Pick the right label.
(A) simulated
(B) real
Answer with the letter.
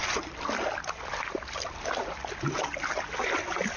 B